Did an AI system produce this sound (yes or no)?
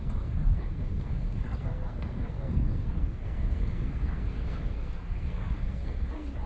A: yes